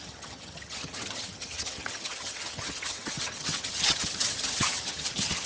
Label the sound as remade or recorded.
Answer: remade